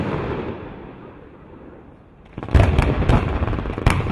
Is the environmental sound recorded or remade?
remade